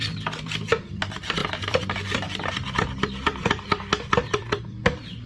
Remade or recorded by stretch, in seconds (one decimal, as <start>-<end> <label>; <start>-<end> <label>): 0.0-5.3 remade